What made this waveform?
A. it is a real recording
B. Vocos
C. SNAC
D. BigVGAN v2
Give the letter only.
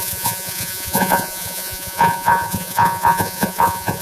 B